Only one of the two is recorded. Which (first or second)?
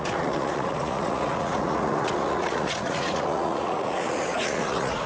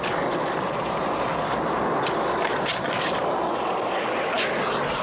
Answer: second